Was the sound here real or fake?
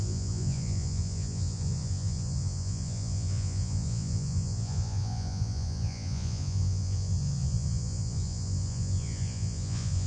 fake